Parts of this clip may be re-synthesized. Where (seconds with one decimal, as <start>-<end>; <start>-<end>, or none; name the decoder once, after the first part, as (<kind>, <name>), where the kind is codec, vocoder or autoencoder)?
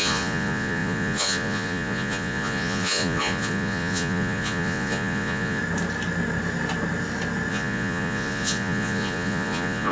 0.0-5.6 (vocoder, Vocos); 7.5-9.9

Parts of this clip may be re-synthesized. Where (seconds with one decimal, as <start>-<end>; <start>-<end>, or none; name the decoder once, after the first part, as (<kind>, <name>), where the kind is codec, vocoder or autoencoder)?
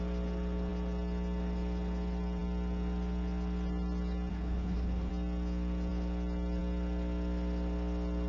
4.3-5.1 (codec, HILCodec)